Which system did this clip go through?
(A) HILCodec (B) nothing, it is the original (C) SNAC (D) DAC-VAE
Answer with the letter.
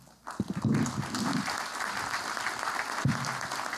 B